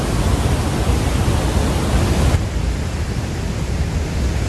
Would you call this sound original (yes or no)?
yes